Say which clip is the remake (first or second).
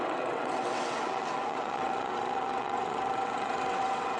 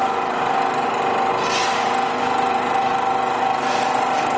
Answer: first